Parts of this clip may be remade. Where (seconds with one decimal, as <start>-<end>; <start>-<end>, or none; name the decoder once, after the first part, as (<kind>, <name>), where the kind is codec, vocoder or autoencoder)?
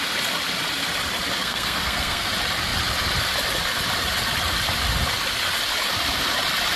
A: 1.4-2.3 (codec, SNAC)